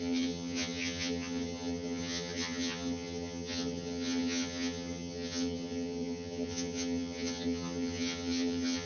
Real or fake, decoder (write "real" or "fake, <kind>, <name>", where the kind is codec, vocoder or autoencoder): fake, vocoder, HiFi-GAN